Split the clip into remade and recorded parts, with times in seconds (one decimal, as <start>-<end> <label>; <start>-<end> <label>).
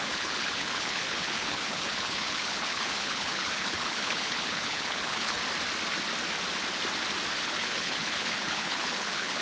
0.0-5.4 remade; 5.4-7.4 recorded; 7.4-9.4 remade